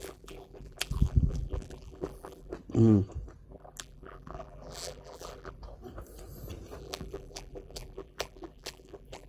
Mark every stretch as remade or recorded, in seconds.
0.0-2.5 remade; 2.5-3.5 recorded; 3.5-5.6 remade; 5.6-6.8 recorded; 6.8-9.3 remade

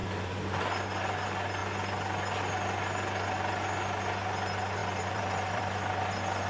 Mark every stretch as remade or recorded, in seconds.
0.0-0.6 remade; 0.6-4.8 recorded; 4.8-5.6 remade; 5.6-6.5 recorded

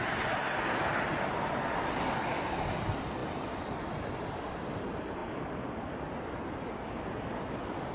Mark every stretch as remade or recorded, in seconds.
0.0-7.9 recorded

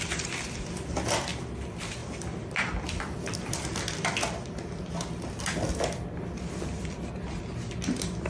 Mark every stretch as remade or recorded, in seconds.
0.0-2.0 recorded; 2.0-7.0 remade; 7.0-8.3 recorded

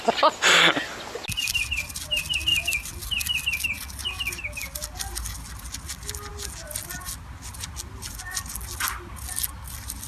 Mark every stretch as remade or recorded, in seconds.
0.0-10.1 recorded